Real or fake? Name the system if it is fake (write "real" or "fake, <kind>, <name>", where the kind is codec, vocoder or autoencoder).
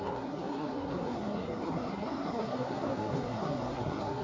fake, codec, SNAC